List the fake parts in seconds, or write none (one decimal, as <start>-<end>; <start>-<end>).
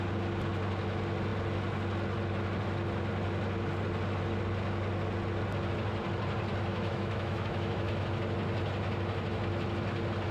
6.7-8.1